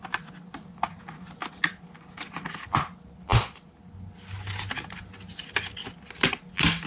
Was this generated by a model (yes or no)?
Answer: no